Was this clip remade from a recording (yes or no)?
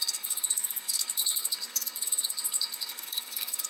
yes